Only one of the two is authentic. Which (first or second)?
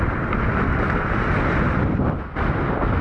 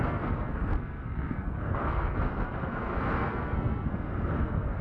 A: first